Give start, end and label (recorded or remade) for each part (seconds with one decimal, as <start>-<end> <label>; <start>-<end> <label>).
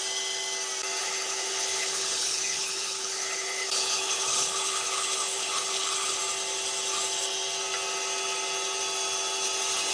0.0-1.0 recorded; 1.0-6.2 remade; 6.2-9.9 recorded